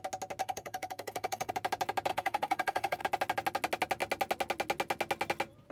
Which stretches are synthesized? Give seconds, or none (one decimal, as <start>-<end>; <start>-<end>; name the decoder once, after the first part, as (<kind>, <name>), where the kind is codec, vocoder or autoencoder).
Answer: 0.4-1.5 (codec, SNAC); 2.1-3.0